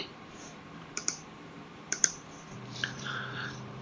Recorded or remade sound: remade